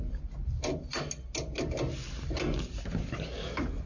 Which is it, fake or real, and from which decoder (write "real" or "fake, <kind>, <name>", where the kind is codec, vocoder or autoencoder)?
real